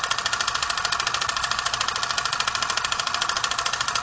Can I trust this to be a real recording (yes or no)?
yes